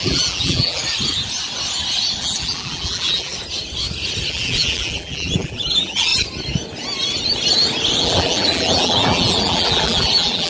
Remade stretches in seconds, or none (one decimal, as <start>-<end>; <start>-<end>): 0.0-0.8; 2.2-3.3; 4.3-6.1; 8.0-10.5